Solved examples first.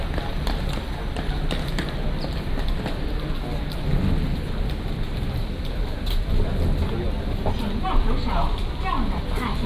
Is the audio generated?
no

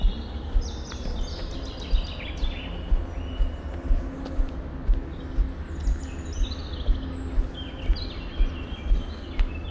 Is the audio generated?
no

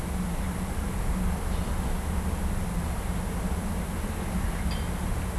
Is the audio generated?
no